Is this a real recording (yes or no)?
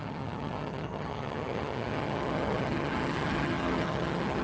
no